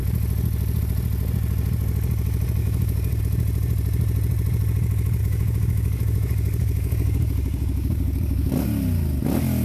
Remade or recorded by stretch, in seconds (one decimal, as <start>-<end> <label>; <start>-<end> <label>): 0.0-2.6 recorded; 2.6-3.2 remade; 3.2-5.2 recorded; 5.2-8.5 remade; 8.5-9.6 recorded

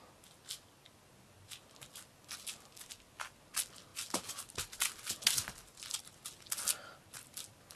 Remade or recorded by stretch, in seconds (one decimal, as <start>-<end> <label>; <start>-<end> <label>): 0.0-7.8 recorded